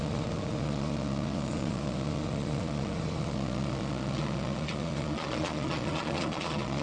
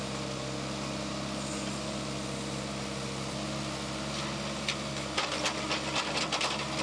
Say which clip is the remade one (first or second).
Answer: first